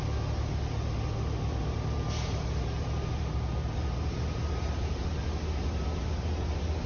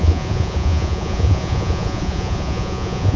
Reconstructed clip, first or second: second